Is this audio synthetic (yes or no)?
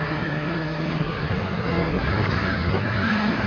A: yes